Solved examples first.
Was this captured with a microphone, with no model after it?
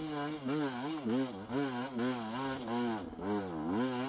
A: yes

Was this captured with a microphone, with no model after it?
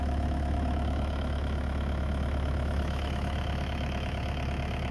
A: no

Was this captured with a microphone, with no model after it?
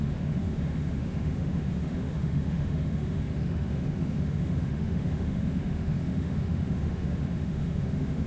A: no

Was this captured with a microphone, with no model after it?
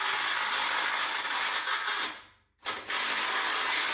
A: yes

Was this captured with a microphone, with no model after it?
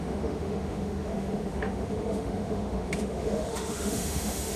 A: no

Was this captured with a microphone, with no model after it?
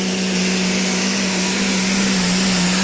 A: yes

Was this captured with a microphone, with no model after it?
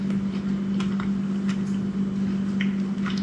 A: yes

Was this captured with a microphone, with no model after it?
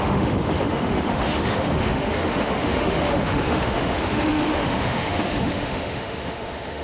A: no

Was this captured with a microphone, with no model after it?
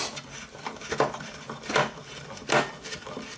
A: yes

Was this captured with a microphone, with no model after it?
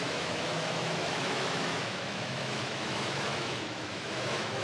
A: no